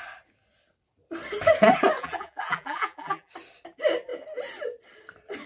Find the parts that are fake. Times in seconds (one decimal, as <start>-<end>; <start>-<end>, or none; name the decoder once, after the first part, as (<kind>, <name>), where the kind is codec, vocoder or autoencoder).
2.0-3.3 (vocoder, BigVGAN v2)